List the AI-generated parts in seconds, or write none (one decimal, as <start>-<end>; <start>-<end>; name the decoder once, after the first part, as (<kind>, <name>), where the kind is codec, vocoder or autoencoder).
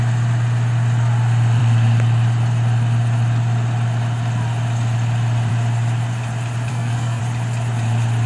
6.7-7.2 (codec, SNAC)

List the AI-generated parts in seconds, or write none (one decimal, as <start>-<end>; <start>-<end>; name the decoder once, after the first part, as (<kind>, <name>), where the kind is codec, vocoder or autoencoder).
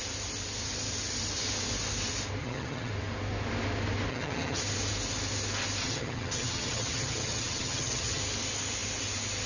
2.4-2.9 (vocoder, HiFi-GAN); 4.1-4.6; 5.8-8.2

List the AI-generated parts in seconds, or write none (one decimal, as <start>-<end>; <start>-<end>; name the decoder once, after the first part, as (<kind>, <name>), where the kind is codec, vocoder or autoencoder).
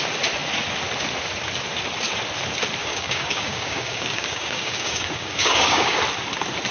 2.8-6.0 (codec, DAC)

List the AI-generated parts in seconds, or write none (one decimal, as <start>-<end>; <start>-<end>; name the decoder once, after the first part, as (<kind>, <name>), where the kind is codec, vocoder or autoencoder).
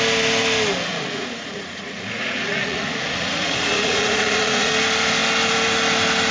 0.9-4.7 (vocoder, Vocos)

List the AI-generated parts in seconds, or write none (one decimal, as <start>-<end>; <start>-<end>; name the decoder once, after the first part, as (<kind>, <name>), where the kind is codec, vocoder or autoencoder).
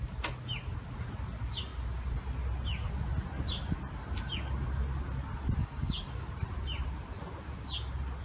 5.6-6.1 (codec, DAC)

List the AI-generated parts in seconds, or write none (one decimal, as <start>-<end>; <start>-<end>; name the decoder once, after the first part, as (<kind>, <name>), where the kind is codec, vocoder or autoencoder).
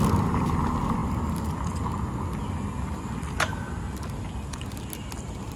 none